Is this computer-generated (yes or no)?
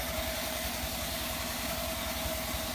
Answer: yes